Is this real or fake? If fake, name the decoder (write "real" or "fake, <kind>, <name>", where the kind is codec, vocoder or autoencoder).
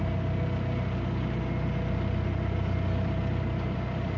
real